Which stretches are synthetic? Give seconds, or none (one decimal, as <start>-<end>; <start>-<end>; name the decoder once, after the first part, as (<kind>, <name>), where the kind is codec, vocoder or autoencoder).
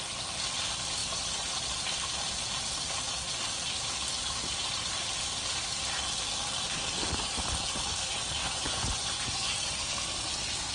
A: 8.4-9.5 (vocoder, Vocos)